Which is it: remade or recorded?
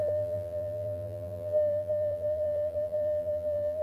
remade